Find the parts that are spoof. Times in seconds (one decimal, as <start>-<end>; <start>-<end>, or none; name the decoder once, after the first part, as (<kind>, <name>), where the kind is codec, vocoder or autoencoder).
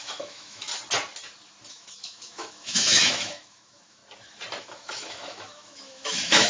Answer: 0.0-0.7 (autoencoder, DAC-VAE); 1.7-4.0; 4.6-6.5